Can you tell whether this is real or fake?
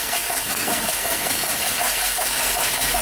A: fake